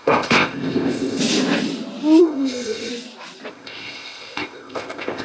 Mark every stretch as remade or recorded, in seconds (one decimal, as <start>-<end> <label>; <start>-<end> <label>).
0.0-1.2 remade; 1.2-2.2 recorded; 2.2-2.9 remade; 2.9-3.5 recorded; 3.5-5.2 remade